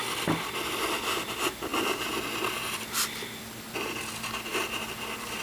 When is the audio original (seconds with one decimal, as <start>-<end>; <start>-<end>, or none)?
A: 0.0-5.4